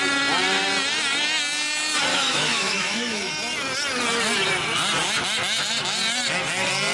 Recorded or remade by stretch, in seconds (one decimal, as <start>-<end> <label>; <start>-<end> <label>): 0.0-2.1 recorded; 2.1-3.3 remade; 3.3-6.9 recorded